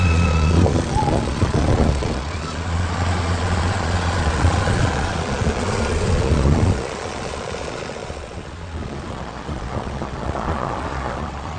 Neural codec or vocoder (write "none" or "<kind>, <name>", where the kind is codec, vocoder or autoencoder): vocoder, Vocos